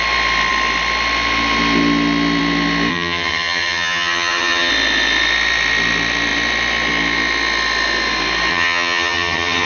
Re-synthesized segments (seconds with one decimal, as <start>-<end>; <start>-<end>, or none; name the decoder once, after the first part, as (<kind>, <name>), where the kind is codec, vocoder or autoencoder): 2.9-4.7 (vocoder, HiFi-GAN); 8.5-9.7